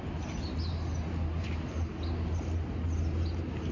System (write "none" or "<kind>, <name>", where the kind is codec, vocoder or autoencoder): none